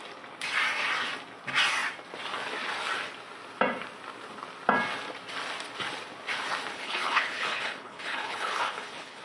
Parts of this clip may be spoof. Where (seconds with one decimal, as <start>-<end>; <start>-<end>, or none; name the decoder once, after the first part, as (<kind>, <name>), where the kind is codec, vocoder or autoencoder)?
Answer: 6.7-9.2 (codec, HILCodec)